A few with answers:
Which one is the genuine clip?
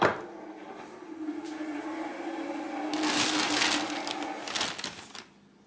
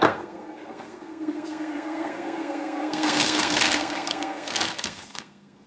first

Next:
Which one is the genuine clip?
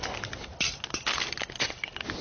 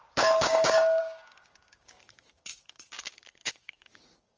first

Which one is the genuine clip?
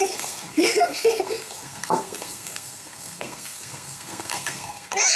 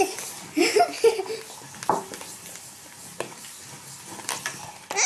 second